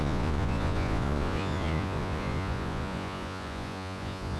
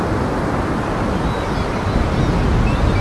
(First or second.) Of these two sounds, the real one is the second